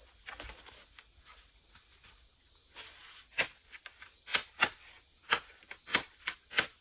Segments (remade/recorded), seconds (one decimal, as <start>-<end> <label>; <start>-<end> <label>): 0.0-6.8 recorded